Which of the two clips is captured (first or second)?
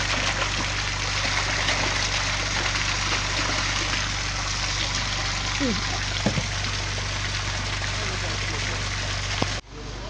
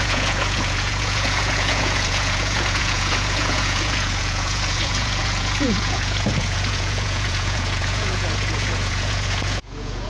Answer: first